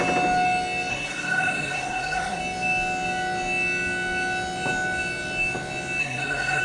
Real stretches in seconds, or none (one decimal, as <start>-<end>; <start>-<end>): 0.0-0.9; 2.4-6.0